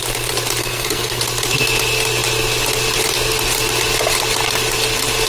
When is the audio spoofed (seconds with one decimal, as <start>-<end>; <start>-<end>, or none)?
0.6-1.2